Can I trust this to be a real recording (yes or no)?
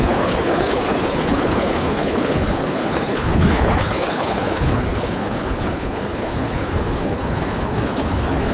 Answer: no